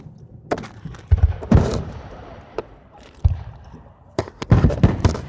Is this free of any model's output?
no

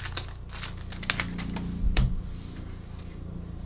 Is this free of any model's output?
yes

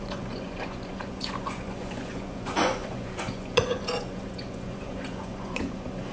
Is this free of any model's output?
no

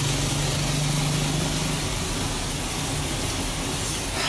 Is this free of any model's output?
yes